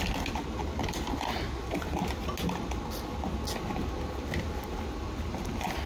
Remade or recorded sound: recorded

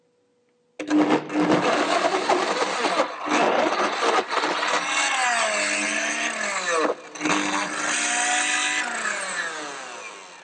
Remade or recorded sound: recorded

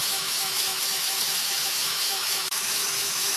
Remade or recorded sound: remade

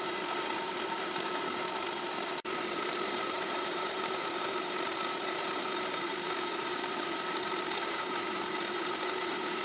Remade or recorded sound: remade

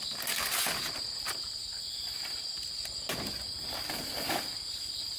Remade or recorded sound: recorded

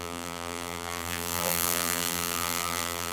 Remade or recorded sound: remade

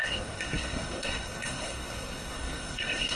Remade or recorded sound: remade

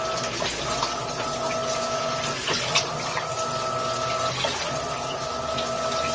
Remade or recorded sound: recorded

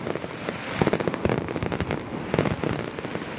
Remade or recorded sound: recorded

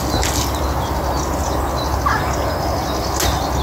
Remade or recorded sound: recorded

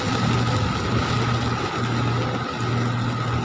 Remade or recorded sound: recorded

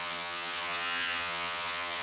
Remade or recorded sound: remade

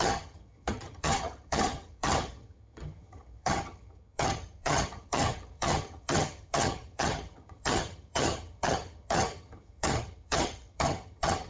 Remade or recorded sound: remade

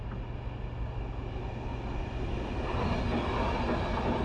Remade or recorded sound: recorded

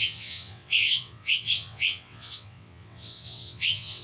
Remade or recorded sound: remade